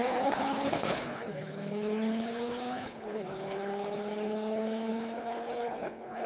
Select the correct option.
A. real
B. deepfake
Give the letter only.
B